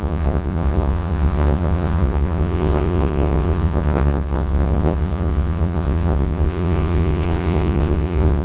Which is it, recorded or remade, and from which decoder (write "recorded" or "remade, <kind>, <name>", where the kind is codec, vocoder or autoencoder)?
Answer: remade, vocoder, Vocos